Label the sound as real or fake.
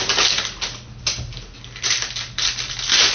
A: real